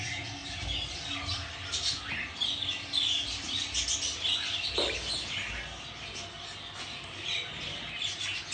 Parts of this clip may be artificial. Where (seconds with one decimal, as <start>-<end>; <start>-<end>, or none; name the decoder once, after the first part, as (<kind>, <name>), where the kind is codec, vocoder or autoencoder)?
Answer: none